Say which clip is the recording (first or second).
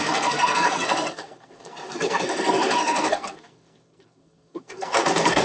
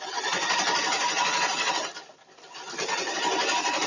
second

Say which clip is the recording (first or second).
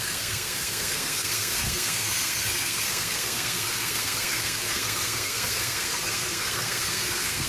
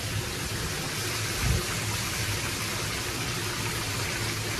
second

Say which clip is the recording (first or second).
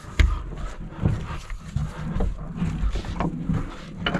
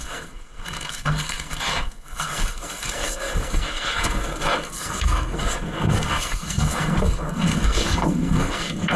first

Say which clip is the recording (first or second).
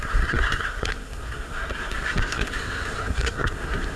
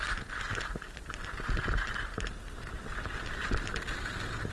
second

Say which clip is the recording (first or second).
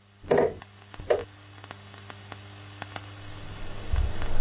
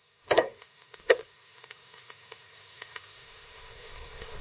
first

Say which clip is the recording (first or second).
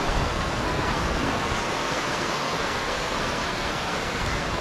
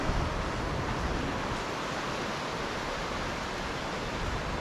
second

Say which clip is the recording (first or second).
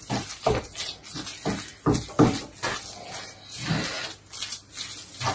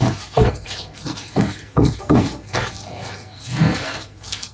first